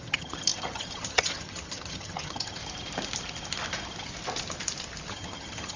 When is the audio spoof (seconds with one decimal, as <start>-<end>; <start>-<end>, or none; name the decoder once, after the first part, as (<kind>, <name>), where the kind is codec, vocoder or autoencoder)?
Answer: 0.0-2.6 (vocoder, HiFi-GAN); 5.1-5.8